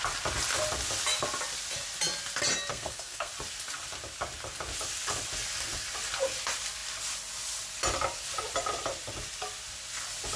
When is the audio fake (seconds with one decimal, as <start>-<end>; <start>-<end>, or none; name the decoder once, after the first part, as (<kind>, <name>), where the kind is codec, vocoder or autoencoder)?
2.7-3.3 (codec, SNAC)